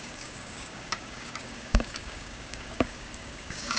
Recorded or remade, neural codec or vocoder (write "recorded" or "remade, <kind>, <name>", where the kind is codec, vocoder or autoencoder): remade, codec, DAC